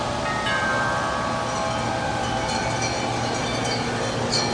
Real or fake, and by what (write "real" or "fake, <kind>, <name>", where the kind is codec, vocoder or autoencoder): real